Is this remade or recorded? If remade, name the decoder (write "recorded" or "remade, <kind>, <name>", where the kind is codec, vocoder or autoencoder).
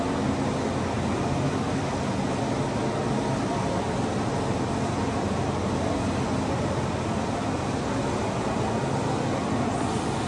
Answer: recorded